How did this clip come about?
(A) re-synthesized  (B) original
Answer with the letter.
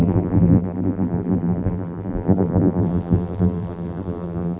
A